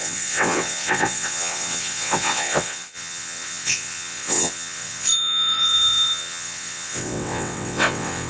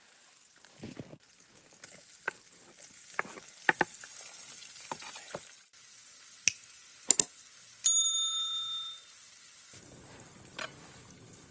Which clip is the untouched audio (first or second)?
second